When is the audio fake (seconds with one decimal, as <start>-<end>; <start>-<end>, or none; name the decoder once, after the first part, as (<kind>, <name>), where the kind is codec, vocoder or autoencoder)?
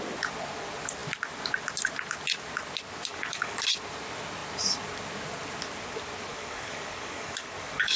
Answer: 3.1-3.7 (codec, DAC); 6.3-8.0